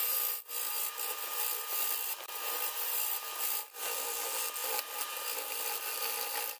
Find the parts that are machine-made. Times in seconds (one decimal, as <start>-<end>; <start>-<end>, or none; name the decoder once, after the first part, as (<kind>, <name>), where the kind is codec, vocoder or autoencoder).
0.0-3.6 (vocoder, BigVGAN v2)